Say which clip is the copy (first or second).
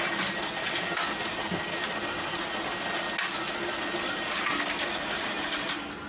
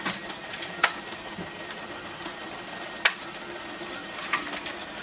second